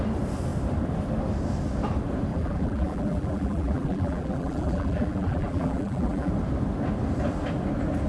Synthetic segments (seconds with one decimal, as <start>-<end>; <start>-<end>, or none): 2.3-6.3